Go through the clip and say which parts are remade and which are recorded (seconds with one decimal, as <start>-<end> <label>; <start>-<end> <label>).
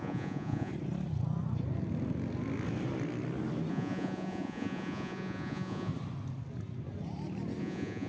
0.0-0.7 remade; 0.7-3.7 recorded; 3.7-5.9 remade; 5.9-7.6 recorded; 7.6-8.1 remade